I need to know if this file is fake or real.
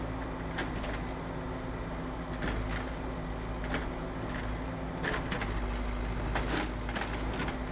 real